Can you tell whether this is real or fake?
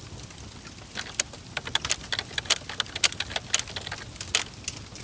real